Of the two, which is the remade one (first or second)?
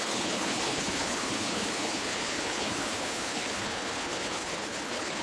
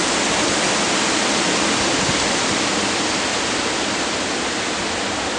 first